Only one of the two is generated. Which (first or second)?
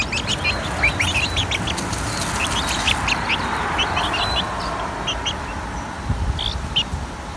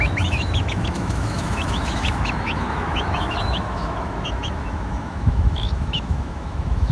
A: second